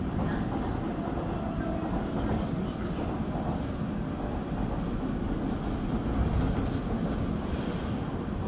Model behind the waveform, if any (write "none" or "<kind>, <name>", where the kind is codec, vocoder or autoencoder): none